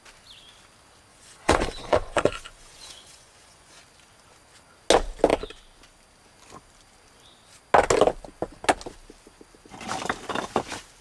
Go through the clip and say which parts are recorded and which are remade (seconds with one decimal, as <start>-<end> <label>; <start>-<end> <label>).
0.0-1.1 recorded; 1.1-3.8 remade; 3.8-11.0 recorded